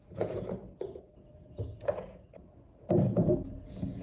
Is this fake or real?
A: fake